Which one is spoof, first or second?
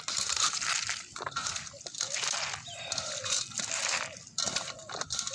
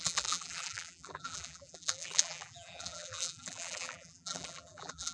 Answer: second